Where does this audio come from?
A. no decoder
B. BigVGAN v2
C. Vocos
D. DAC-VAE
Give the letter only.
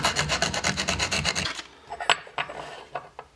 A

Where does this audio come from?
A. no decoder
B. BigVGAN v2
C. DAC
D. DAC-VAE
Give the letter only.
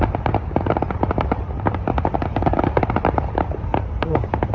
B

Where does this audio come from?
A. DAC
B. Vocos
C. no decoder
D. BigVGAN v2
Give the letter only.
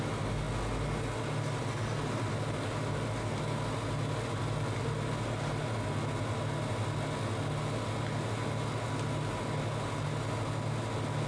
C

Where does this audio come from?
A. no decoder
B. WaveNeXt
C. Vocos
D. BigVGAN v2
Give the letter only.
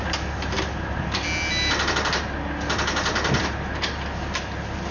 A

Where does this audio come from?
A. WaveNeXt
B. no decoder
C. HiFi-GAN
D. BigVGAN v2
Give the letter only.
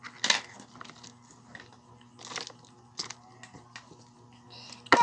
B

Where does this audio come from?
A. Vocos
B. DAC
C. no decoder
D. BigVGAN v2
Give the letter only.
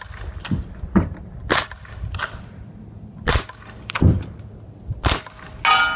C